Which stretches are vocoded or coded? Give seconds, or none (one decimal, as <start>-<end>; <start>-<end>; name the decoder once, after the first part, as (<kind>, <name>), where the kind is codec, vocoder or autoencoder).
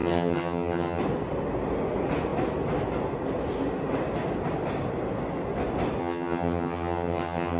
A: 0.0-1.0 (vocoder, HiFi-GAN); 6.0-7.6